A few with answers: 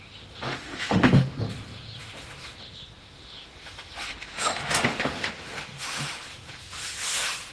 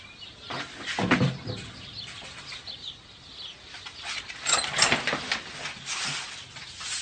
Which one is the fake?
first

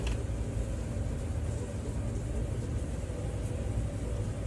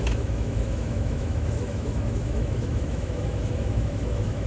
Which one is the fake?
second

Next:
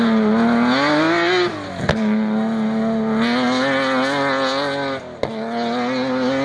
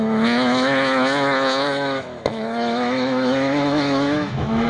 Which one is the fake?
second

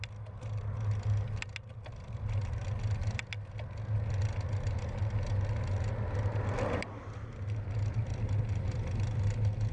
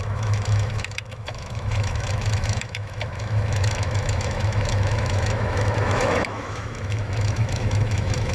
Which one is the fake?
second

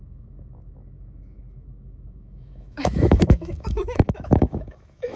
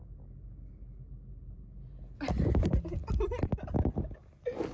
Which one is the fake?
first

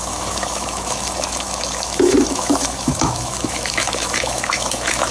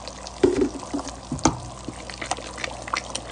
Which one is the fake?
first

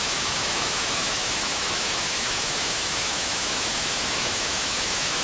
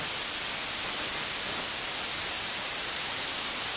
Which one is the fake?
first